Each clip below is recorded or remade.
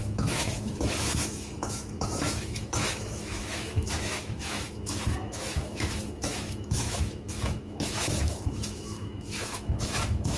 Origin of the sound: remade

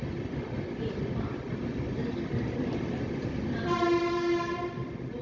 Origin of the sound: recorded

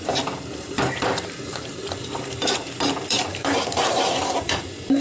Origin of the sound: remade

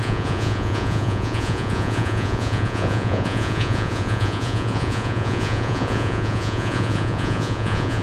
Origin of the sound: remade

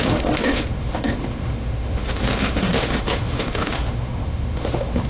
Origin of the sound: remade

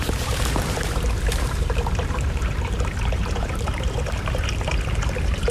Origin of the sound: remade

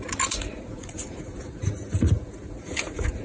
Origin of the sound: remade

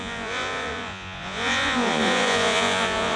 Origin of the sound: remade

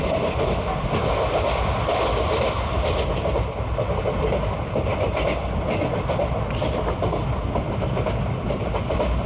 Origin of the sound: recorded